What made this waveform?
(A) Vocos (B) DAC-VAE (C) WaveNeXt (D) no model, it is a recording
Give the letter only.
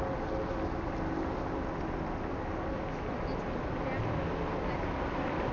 D